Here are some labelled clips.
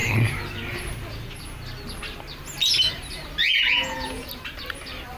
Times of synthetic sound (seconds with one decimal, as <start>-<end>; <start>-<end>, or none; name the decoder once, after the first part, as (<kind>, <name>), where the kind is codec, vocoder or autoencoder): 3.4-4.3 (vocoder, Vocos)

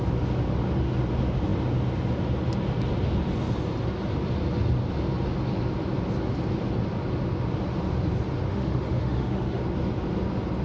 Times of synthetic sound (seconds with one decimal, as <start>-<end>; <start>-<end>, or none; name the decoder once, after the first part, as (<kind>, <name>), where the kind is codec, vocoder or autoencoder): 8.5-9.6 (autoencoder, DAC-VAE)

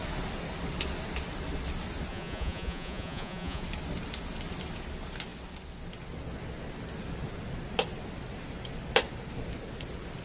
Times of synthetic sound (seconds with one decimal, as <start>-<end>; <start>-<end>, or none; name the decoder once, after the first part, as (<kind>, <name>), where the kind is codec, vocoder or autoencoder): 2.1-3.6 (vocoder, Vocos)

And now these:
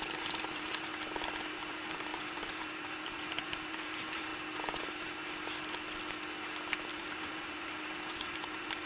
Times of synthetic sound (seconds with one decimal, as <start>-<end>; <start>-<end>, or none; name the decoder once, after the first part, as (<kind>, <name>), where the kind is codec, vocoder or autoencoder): 0.0-0.9 (vocoder, BigVGAN v2); 1.7-4.3; 4.8-5.2; 6.9-8.9